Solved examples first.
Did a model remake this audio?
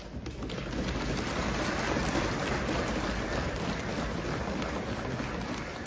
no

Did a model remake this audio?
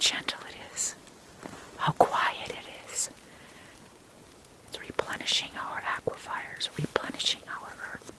no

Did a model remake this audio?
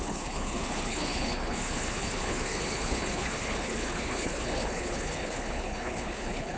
yes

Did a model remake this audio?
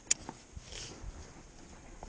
no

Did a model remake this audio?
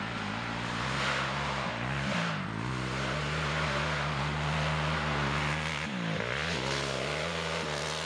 no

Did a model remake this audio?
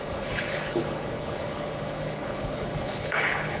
yes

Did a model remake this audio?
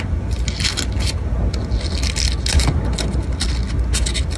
no